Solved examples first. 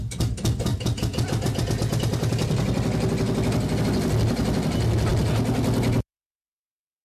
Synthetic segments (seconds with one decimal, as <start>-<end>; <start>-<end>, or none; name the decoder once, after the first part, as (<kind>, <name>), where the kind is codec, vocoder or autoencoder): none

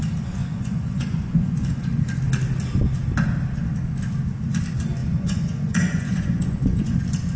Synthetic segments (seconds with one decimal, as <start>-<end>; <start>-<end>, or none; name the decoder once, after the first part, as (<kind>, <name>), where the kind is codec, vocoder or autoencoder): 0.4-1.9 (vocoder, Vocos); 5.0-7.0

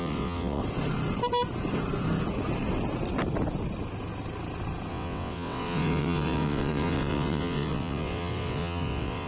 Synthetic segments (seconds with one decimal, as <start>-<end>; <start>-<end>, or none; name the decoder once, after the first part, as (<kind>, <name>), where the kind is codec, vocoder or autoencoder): 0.0-0.6 (vocoder, WaveNeXt); 4.9-9.3

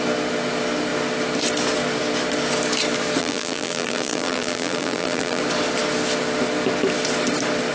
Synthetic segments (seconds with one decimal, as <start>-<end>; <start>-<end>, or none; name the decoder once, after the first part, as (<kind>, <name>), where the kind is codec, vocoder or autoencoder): 3.2-5.4 (vocoder, BigVGAN v2)

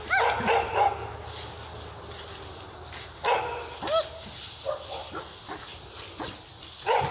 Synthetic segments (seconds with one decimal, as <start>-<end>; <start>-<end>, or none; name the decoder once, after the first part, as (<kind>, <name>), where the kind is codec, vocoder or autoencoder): none

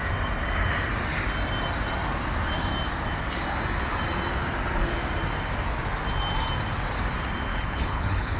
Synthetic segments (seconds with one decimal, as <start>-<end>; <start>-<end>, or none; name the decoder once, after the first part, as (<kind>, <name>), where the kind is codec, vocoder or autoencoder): 7.5-8.4 (codec, HILCodec)

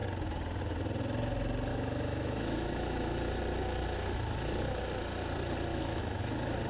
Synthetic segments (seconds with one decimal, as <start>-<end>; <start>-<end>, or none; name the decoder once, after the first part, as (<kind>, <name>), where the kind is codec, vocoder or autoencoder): 1.7-3.3 (autoencoder, DAC-VAE); 5.7-6.2

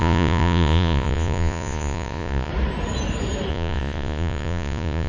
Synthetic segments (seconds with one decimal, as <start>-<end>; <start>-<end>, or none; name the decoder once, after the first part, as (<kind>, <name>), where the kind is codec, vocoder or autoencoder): 0.0-2.5 (vocoder, Vocos); 3.5-5.1